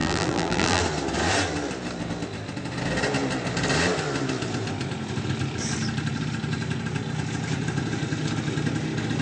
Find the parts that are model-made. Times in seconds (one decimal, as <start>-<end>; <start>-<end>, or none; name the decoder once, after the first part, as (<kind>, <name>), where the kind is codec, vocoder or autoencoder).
0.0-0.8 (vocoder, BigVGAN v2)

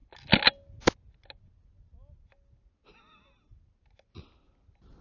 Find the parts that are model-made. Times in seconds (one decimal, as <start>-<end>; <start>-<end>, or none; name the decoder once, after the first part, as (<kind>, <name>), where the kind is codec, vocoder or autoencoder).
none